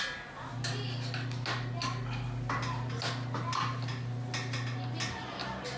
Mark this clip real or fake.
real